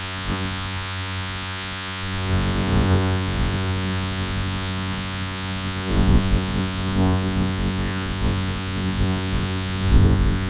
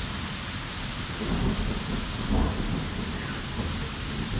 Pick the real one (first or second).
second